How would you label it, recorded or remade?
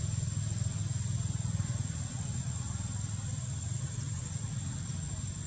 recorded